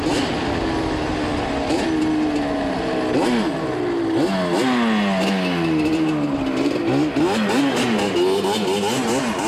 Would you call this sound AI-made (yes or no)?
no